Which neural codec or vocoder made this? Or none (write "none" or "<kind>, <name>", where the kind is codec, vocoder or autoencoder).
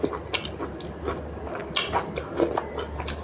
none